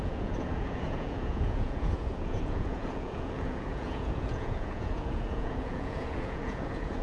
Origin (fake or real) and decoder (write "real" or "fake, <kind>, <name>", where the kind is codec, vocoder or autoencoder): fake, vocoder, Vocos